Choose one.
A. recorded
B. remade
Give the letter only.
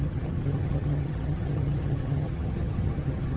B